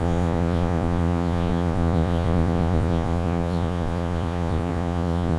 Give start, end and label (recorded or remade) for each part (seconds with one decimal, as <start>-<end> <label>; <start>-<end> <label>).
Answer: 0.0-5.4 remade